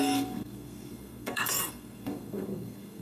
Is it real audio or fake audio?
fake